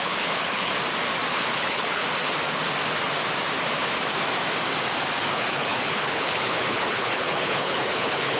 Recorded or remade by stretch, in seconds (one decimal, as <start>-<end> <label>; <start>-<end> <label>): 0.0-0.7 remade; 0.7-1.3 recorded; 1.3-2.0 remade; 2.0-5.3 recorded; 5.3-8.4 remade